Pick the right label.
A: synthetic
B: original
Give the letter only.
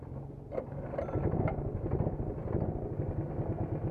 B